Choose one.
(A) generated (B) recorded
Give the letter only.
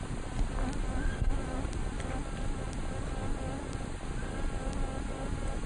B